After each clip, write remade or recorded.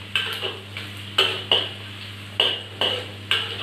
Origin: recorded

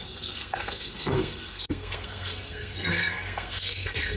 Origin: remade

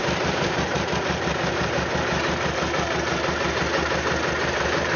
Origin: remade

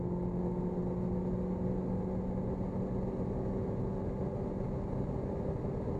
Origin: recorded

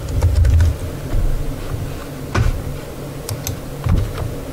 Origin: recorded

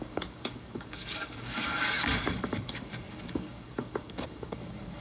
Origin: remade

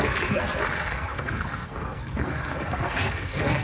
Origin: remade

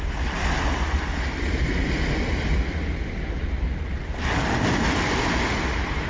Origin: recorded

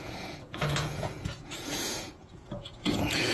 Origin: remade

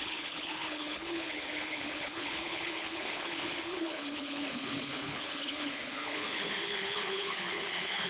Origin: remade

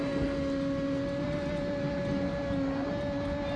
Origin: recorded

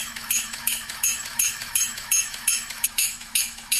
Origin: remade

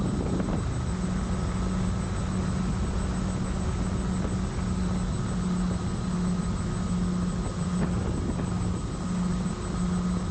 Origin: recorded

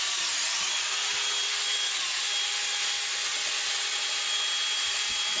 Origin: recorded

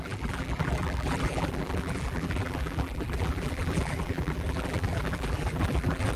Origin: remade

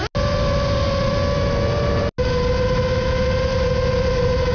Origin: recorded